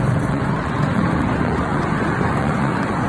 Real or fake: fake